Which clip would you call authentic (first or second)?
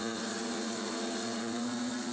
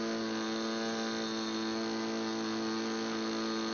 second